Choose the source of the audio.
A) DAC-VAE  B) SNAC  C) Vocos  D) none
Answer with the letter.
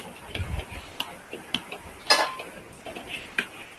D